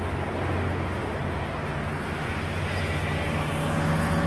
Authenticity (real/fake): real